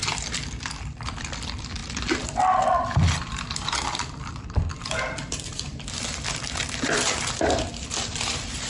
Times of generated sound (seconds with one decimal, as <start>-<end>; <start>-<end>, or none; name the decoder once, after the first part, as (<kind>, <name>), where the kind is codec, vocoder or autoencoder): 0.8-1.8 (vocoder, BigVGAN v2); 2.7-8.7